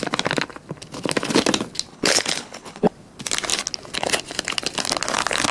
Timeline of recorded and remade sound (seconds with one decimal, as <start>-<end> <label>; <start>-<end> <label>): 0.0-1.9 recorded; 1.9-2.9 remade; 2.9-5.5 recorded